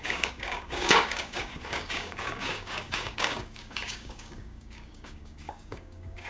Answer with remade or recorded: remade